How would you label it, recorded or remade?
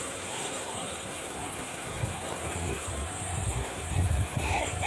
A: remade